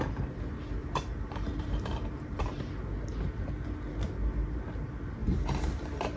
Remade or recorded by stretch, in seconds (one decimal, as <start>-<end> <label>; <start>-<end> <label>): 0.0-0.8 recorded; 0.8-2.7 remade; 2.7-5.2 recorded; 5.2-5.7 remade; 5.7-6.2 recorded